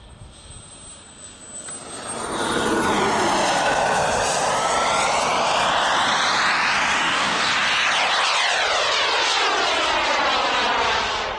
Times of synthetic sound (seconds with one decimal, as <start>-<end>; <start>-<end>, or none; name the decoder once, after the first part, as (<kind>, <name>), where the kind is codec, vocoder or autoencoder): 7.0-7.5 (codec, DAC)